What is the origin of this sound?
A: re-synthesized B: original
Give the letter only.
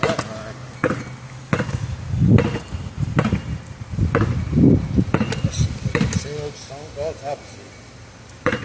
B